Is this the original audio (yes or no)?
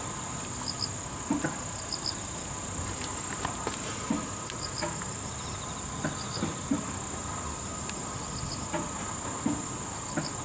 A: yes